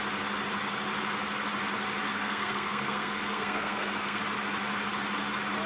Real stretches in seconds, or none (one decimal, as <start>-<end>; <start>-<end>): 0.0-2.1; 4.2-5.7